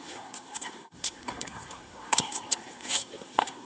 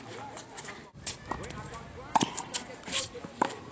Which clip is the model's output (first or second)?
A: first